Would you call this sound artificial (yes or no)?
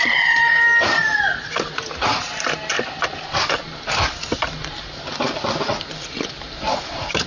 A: no